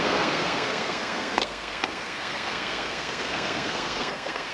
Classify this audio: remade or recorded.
remade